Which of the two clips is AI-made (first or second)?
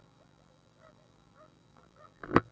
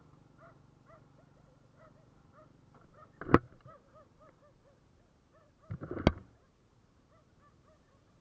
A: first